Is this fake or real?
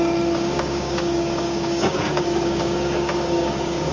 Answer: fake